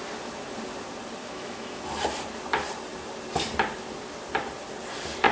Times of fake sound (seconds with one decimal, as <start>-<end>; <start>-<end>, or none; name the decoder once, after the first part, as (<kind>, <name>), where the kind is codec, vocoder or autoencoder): 1.2-1.8 (autoencoder, DAC-VAE)